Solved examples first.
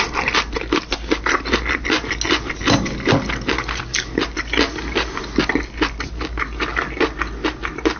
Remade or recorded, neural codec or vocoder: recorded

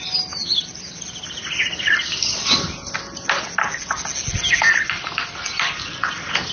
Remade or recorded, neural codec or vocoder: recorded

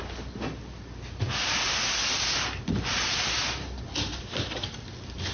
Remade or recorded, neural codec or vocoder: recorded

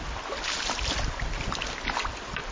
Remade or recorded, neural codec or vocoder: recorded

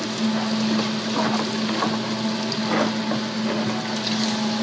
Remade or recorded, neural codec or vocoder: recorded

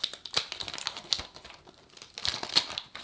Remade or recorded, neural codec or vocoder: recorded